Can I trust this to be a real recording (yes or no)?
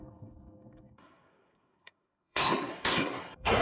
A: no